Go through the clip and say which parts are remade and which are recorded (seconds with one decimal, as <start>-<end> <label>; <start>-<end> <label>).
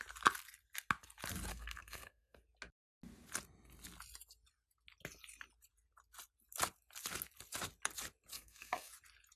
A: 0.0-1.5 recorded; 1.5-2.4 remade; 2.4-8.3 recorded; 8.3-8.9 remade; 8.9-9.4 recorded